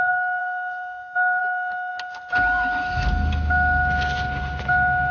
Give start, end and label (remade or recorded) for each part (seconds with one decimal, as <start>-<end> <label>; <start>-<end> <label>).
0.0-0.4 recorded; 0.4-1.4 remade; 1.4-5.1 recorded